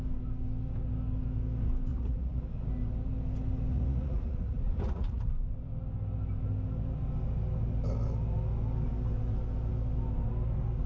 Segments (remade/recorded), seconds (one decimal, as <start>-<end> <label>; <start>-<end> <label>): 0.0-1.9 recorded; 1.9-2.4 remade; 2.4-3.7 recorded; 3.7-5.3 remade; 5.3-10.9 recorded